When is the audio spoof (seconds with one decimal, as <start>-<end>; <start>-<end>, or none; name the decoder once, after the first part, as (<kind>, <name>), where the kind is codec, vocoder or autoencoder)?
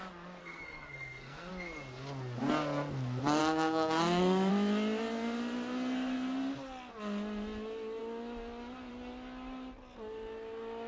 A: 0.4-1.5 (codec, SNAC); 3.4-4.5